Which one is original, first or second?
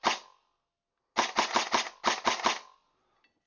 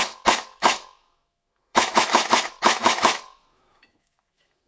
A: first